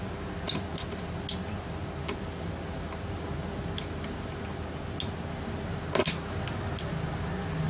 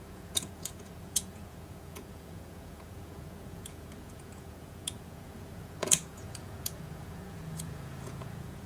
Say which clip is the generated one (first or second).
second